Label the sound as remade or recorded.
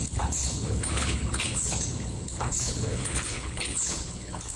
remade